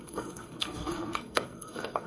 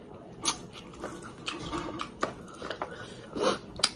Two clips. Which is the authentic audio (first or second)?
second